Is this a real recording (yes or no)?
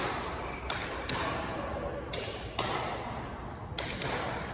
yes